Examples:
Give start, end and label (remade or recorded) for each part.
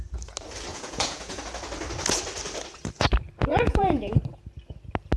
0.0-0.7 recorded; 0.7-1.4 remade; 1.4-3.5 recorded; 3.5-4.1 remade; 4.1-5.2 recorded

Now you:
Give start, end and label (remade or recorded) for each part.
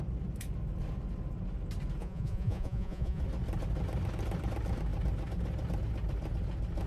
0.0-2.0 recorded; 2.0-3.2 remade; 3.2-6.9 recorded